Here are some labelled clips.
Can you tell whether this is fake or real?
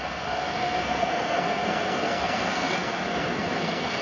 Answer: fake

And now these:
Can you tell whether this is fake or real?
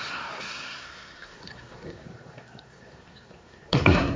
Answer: fake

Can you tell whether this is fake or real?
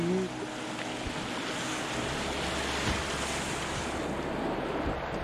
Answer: real